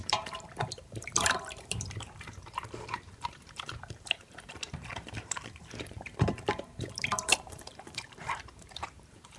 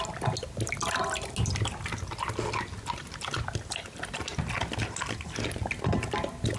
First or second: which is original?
second